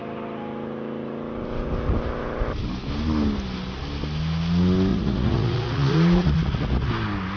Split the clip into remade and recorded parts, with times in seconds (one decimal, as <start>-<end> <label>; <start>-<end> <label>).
0.0-4.9 recorded; 4.9-6.9 remade; 6.9-7.4 recorded

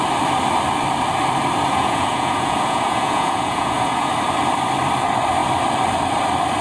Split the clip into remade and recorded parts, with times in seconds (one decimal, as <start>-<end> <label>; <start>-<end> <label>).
0.0-1.7 recorded; 1.7-4.1 remade; 4.1-6.6 recorded

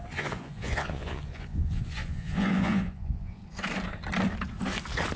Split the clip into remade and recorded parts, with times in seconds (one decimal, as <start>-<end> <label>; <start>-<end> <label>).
0.0-3.4 remade; 3.4-5.2 recorded

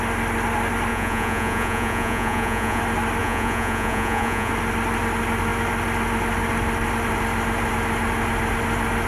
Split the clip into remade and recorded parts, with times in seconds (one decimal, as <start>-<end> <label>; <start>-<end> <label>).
0.0-0.9 recorded; 0.9-2.8 remade; 2.8-3.2 recorded; 3.2-4.5 remade; 4.5-9.1 recorded

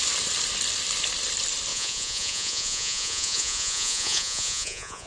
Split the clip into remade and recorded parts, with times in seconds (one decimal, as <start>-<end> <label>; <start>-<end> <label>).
0.0-1.7 recorded; 1.7-5.1 remade

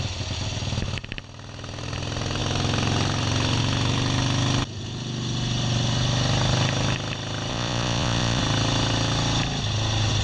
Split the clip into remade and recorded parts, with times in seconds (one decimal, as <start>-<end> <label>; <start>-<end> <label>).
0.0-7.5 recorded; 7.5-8.4 remade; 8.4-10.2 recorded

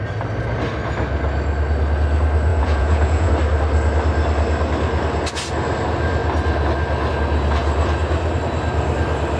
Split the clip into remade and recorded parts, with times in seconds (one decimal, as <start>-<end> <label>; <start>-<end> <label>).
0.0-2.5 recorded; 2.5-3.3 remade; 3.3-9.4 recorded

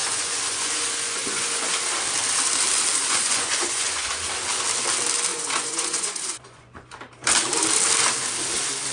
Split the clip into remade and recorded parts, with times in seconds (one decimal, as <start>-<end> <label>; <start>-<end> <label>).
0.0-1.7 remade; 1.7-3.0 recorded; 3.0-4.1 remade; 4.1-5.3 recorded; 5.3-6.9 remade; 6.9-8.9 recorded